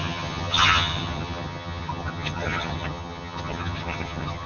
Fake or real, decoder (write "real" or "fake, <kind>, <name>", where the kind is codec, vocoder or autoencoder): fake, vocoder, HiFi-GAN